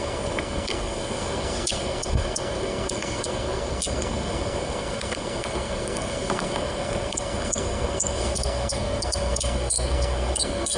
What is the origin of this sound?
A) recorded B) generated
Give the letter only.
B